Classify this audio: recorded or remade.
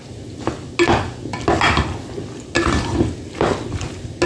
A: recorded